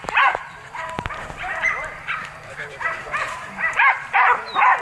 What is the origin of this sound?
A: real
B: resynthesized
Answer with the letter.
B